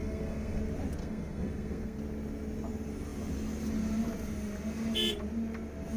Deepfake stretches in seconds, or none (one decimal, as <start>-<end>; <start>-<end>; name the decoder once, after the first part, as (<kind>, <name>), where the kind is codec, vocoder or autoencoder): 0.0-0.6 (codec, SNAC); 1.0-2.0